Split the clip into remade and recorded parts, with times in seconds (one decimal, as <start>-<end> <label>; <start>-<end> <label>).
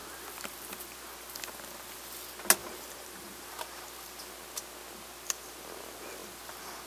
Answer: 0.0-2.6 recorded; 2.6-3.5 remade; 3.5-6.9 recorded